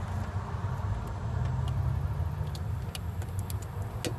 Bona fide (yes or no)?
yes